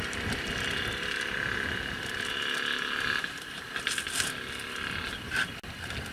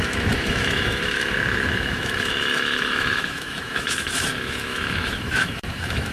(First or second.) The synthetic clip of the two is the second